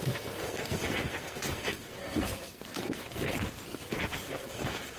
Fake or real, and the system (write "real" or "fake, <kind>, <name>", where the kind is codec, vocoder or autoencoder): fake, codec, SNAC